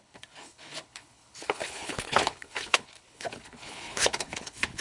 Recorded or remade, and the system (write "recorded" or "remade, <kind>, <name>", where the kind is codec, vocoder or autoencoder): remade, codec, HILCodec